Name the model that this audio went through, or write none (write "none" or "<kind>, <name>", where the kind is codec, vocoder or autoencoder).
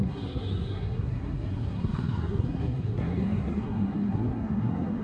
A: codec, SNAC